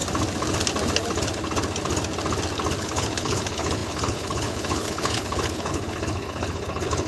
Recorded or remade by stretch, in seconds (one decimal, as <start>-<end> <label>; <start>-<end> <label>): 0.0-2.8 recorded; 2.8-7.1 remade